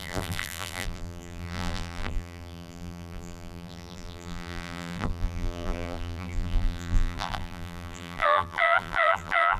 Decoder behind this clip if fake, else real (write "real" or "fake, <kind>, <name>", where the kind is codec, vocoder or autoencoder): fake, vocoder, BigVGAN v2